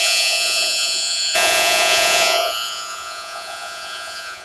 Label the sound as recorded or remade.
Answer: remade